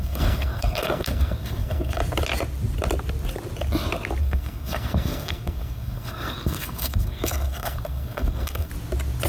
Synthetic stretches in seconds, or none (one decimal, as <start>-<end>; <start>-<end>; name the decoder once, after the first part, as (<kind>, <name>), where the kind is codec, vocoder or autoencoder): 0.0-2.0 (codec, SNAC); 4.2-8.7